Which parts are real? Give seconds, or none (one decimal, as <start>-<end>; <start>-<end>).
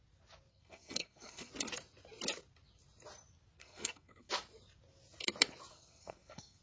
0.0-0.5; 1.5-3.6; 4.3-5.7